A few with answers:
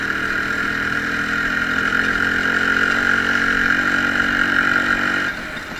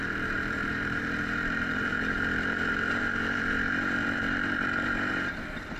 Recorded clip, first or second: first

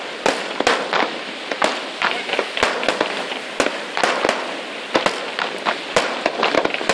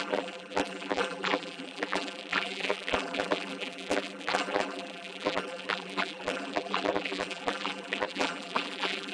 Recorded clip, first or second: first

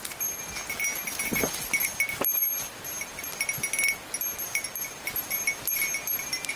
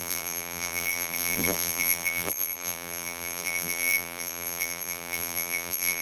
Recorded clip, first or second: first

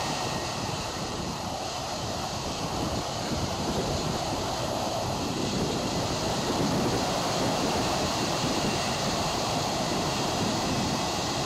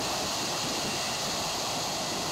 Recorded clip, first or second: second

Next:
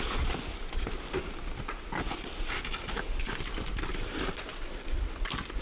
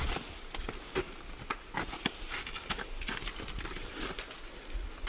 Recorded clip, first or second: second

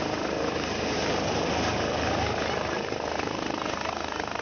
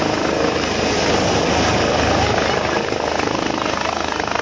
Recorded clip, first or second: second